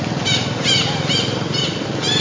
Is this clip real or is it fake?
real